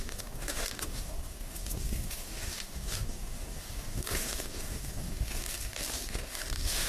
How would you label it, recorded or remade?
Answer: remade